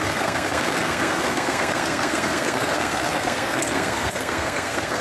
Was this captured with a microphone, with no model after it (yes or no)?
no